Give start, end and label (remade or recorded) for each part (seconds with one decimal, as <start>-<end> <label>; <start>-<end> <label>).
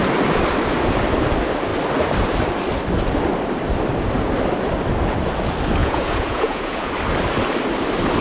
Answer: 0.0-5.8 recorded; 5.8-6.9 remade; 6.9-8.2 recorded